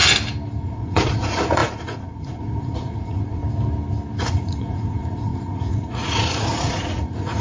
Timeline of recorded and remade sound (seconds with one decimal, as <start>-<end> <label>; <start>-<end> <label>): 0.0-0.6 recorded; 0.6-3.4 remade; 3.4-4.2 recorded; 4.2-7.4 remade